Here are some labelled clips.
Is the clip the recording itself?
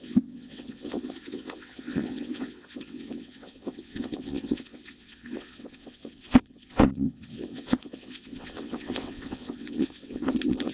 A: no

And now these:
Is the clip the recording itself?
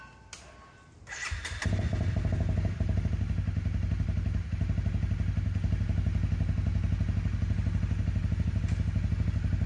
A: yes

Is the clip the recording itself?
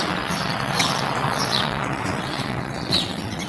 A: no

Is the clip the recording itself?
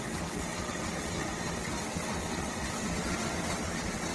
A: no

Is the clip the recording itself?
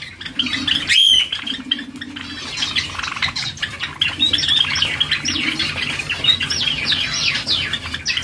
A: yes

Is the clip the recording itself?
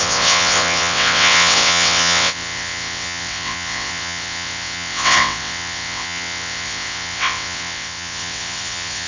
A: no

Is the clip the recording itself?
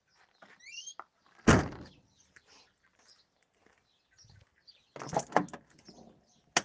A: yes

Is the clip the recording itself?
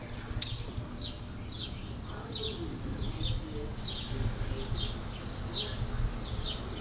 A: yes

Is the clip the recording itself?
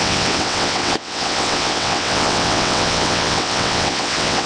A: no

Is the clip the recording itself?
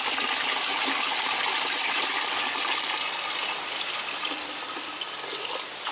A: yes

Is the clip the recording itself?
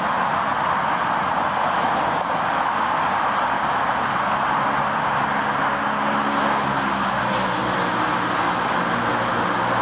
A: yes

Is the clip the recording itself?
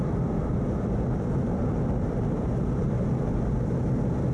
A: yes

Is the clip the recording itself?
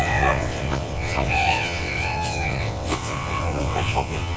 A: no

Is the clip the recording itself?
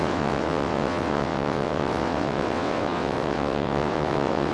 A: no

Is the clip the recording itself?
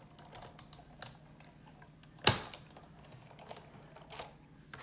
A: yes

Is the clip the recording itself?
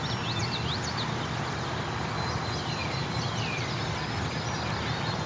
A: yes